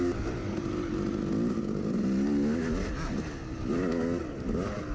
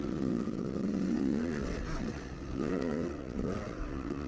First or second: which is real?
first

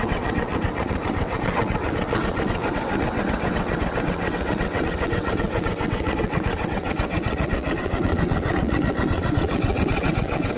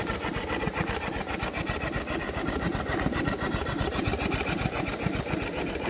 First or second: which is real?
second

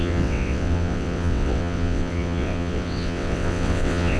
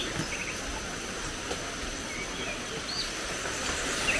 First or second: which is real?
second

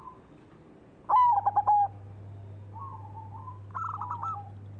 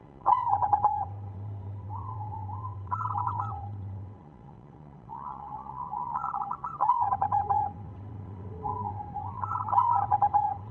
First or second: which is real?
first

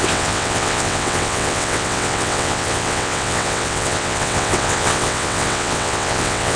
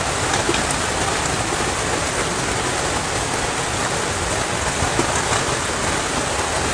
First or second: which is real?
second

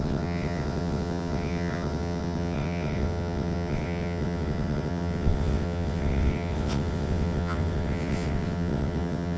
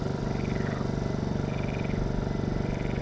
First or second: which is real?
second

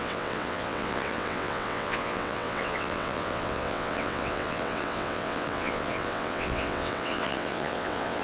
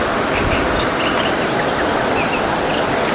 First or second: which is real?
second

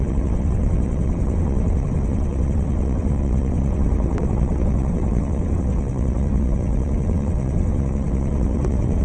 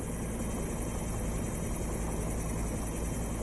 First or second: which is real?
second